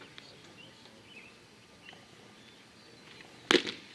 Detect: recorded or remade recorded